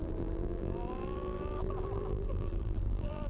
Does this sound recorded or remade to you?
remade